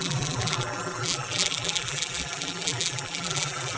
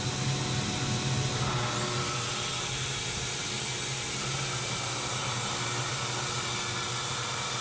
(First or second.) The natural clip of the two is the second